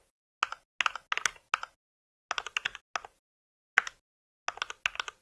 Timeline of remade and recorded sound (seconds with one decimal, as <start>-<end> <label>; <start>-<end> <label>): 0.0-5.2 recorded